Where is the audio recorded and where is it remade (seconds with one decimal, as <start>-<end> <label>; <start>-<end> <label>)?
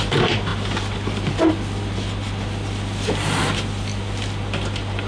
0.0-5.1 recorded